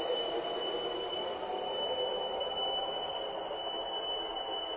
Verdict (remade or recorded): recorded